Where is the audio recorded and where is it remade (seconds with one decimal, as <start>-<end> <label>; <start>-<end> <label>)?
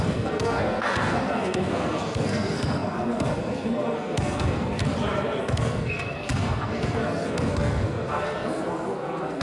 0.0-4.8 remade; 4.8-5.4 recorded; 5.4-9.4 remade